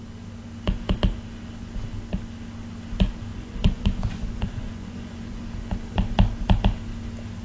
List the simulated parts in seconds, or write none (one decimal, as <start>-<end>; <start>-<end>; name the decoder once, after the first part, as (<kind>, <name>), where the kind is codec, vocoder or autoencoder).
3.3-5.4 (vocoder, Vocos)